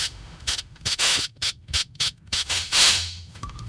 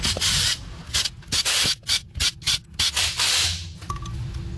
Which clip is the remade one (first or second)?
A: first